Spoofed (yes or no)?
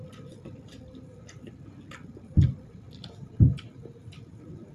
no